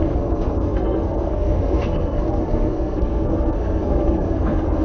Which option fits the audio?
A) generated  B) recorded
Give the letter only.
A